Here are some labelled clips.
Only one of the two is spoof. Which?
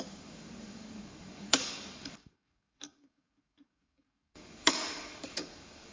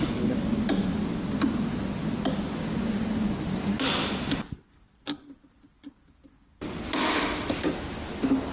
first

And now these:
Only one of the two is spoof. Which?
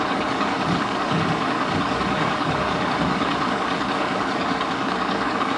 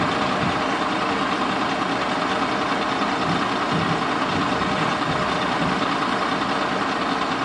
first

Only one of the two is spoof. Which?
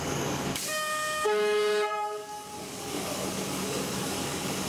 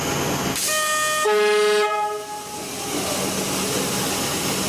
first